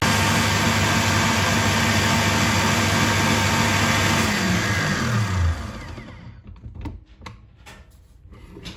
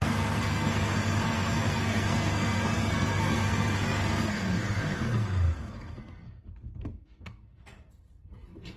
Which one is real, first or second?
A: first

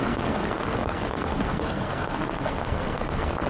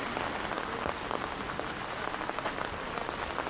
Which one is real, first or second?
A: second